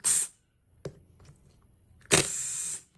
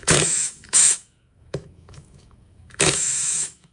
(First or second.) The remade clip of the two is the second